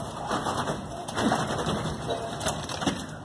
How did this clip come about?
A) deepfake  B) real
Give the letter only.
B